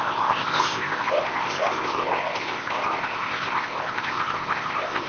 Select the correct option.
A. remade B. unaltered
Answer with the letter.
A